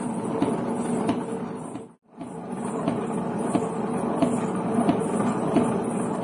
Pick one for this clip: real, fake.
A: real